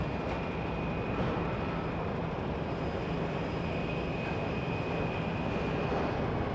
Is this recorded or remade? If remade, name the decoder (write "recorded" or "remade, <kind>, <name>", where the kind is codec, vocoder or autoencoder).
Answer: recorded